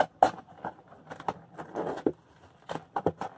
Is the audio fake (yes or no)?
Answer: no